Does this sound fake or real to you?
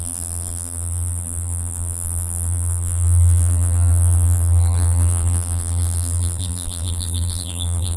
fake